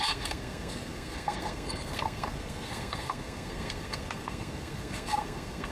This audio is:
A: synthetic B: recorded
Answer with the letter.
A